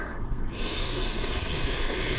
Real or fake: fake